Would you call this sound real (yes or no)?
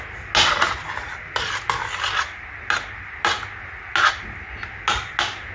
yes